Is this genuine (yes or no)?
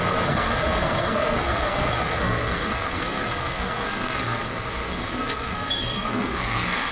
no